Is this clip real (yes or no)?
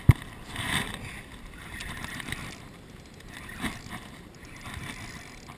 yes